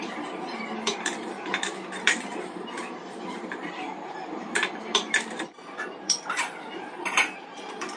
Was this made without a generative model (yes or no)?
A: no